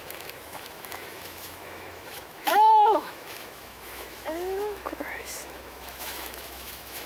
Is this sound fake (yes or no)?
yes